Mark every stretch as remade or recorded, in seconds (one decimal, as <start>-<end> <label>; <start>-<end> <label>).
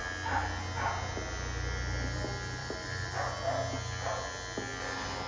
0.0-2.6 recorded; 2.6-3.1 remade; 3.1-5.3 recorded